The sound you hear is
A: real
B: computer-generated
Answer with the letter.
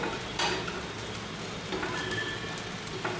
A